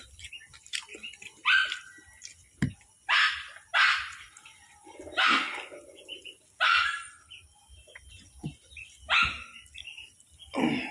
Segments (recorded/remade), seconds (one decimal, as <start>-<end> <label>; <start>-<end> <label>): 0.0-10.9 recorded